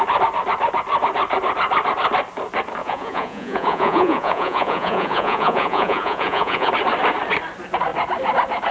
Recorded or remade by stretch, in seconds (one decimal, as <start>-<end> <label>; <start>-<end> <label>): 0.0-2.8 recorded; 2.8-6.7 remade; 6.7-8.7 recorded